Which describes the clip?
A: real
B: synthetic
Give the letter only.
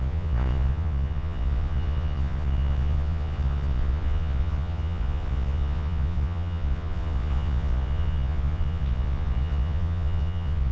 B